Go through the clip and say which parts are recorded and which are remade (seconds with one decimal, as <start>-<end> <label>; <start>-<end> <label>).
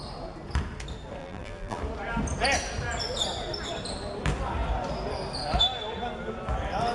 0.0-1.2 recorded; 1.2-1.8 remade; 1.8-6.9 recorded